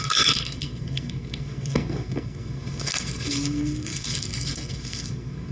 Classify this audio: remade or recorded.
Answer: remade